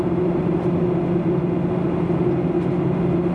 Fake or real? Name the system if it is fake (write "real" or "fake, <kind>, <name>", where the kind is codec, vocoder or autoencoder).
real